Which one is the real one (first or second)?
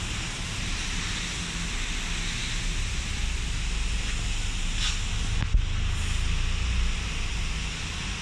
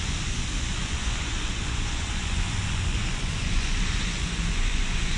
first